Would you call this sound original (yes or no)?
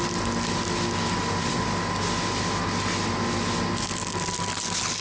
yes